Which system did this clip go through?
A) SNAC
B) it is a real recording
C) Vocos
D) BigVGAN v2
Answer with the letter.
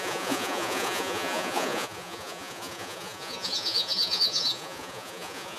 C